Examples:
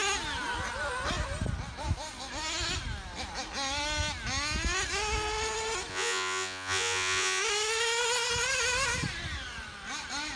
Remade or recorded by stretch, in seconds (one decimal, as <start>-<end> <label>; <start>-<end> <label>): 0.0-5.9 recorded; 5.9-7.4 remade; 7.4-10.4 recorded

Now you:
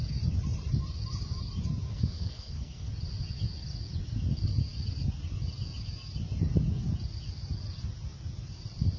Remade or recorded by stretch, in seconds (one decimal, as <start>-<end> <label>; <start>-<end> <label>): 0.0-1.9 recorded; 1.9-2.9 remade; 2.9-9.0 recorded

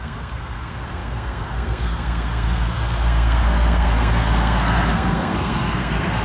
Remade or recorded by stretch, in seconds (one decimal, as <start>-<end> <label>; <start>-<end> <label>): 0.0-6.2 remade

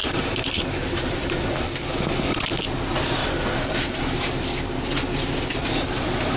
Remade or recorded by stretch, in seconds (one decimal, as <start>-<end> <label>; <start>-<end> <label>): 0.0-1.3 remade; 1.3-3.2 recorded; 3.2-4.4 remade; 4.4-6.4 recorded